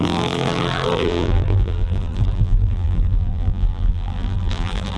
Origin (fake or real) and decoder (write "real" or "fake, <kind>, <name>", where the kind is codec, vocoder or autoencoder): fake, vocoder, BigVGAN v2